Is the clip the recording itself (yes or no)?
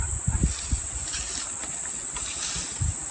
yes